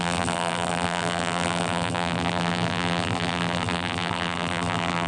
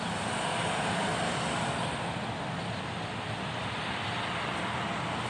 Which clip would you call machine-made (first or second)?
first